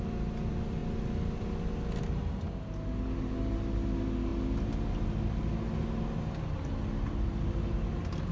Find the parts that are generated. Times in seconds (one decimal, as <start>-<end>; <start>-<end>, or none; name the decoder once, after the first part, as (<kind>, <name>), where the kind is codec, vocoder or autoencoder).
none